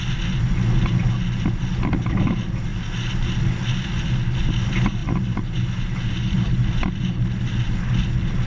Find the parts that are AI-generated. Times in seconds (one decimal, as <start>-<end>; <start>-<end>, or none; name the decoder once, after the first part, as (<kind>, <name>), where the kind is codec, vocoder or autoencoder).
2.7-3.4 (vocoder, BigVGAN v2); 5.0-6.4